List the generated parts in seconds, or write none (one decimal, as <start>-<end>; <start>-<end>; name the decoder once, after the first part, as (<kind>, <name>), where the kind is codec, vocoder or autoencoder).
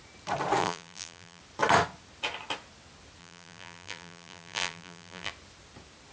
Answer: 0.6-1.4 (vocoder, BigVGAN v2); 3.2-5.3